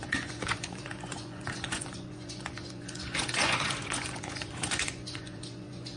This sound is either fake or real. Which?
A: fake